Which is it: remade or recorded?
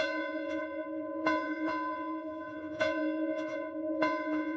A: remade